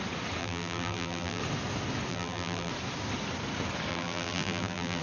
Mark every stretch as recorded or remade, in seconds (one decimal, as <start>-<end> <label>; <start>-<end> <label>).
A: 0.0-0.4 recorded; 0.4-1.4 remade; 1.4-2.1 recorded; 2.1-2.7 remade; 2.7-3.9 recorded; 3.9-5.0 remade